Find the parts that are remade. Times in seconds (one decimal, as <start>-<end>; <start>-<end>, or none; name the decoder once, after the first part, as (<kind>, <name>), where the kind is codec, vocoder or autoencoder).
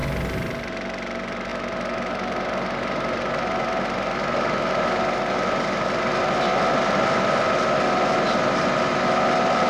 none